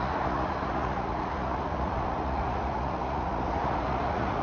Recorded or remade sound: remade